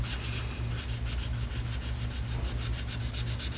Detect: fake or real real